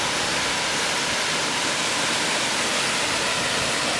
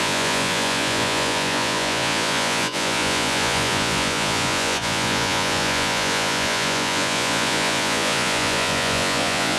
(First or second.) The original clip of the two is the first